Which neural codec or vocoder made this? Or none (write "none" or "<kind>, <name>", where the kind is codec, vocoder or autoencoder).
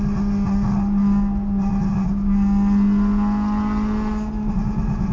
none